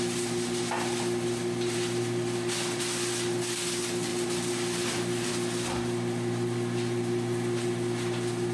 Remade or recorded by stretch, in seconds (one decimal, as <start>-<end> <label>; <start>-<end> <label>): 0.0-8.5 recorded